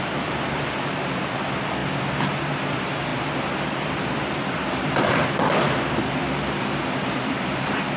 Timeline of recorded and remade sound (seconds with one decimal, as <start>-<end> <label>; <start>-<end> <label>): 0.0-1.8 remade; 1.8-2.4 recorded; 2.4-3.1 remade; 3.1-3.7 recorded; 3.7-8.0 remade

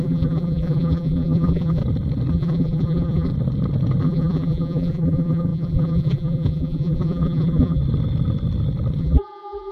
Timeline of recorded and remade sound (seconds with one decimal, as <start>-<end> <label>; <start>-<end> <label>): 0.0-1.8 remade; 1.8-2.3 recorded; 2.3-3.3 remade; 3.3-4.0 recorded; 4.0-7.8 remade; 7.8-9.0 recorded; 9.0-9.7 remade

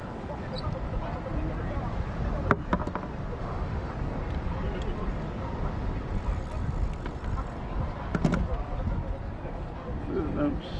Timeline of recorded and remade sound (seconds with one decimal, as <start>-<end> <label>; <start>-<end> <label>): 0.0-3.4 recorded; 3.4-3.9 remade; 3.9-10.8 recorded

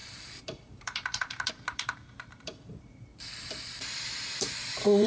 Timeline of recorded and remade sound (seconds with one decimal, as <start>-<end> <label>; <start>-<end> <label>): 0.0-3.1 remade; 3.1-3.7 recorded; 3.7-5.1 remade

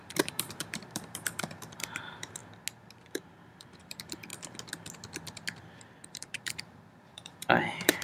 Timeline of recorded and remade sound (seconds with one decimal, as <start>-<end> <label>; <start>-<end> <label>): 0.0-2.4 remade; 2.4-3.0 recorded; 3.0-4.3 remade; 4.3-6.1 recorded; 6.1-8.0 remade

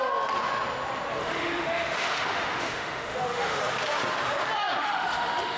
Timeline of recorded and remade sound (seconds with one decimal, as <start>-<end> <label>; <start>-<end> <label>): 0.0-1.2 recorded; 1.2-3.6 remade; 3.6-4.8 recorded; 4.8-5.6 remade